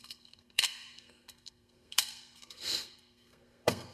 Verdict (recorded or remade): remade